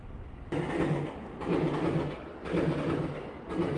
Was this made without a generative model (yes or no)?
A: yes